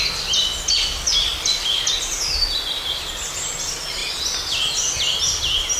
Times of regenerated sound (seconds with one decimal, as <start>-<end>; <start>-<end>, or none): none